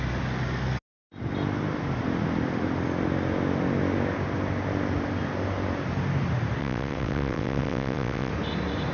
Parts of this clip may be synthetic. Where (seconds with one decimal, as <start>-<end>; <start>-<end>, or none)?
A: 6.6-8.3